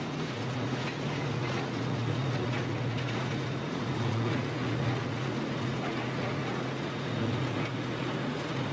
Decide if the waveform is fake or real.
fake